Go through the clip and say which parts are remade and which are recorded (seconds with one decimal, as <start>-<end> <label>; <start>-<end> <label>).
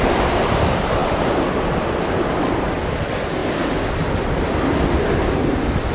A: 0.0-5.9 recorded